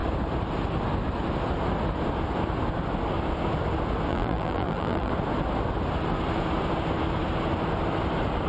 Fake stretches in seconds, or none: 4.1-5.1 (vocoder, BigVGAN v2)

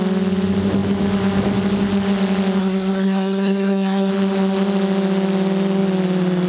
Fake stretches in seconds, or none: 2.6-4.1 (codec, SNAC)

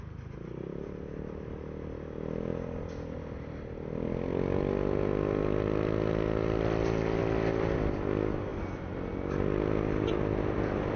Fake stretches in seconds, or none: none

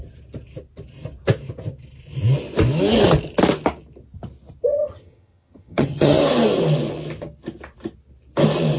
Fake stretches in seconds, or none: 4.7-6.2 (vocoder, HiFi-GAN)

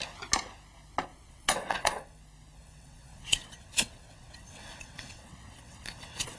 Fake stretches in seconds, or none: 1.1-2.2 (vocoder, WaveNeXt); 2.6-6.4